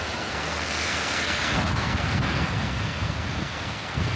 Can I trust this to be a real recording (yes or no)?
no